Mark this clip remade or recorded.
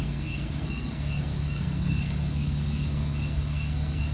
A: remade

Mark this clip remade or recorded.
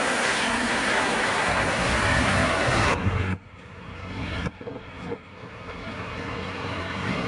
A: remade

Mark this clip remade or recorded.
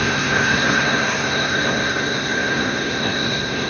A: remade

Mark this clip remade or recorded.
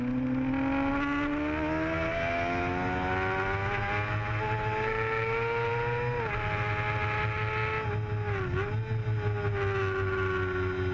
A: recorded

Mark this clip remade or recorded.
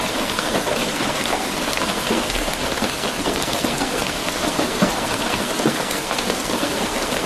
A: remade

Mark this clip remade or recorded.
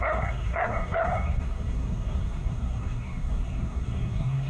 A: remade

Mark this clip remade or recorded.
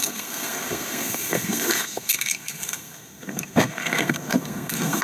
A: remade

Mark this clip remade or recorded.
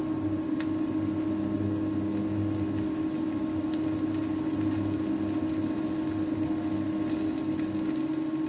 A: recorded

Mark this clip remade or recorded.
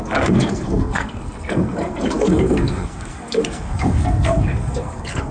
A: remade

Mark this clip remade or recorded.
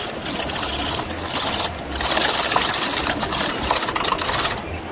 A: recorded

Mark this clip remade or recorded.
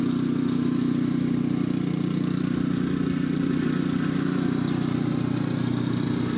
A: recorded